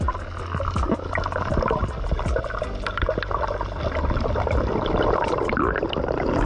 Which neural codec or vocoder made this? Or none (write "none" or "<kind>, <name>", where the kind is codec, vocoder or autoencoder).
none